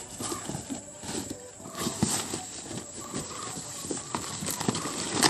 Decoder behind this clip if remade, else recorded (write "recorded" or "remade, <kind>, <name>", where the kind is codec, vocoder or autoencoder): recorded